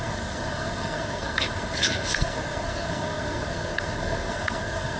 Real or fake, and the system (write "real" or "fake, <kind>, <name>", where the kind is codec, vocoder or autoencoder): fake, codec, SNAC